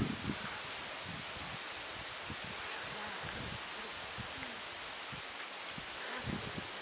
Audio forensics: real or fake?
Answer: real